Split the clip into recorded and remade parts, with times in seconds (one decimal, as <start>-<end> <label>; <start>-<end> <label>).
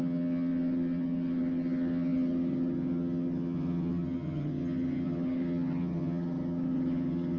0.0-7.4 remade